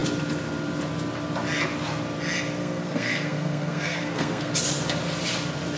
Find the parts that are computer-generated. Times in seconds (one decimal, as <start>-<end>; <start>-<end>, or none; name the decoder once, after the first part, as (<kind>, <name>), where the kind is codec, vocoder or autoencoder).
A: 2.6-4.5 (codec, SNAC)